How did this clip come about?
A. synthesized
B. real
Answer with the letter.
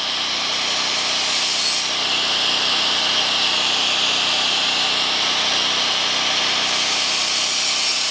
B